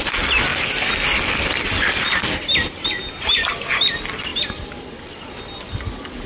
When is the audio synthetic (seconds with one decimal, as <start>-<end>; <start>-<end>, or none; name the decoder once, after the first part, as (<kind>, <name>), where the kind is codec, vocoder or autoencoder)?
none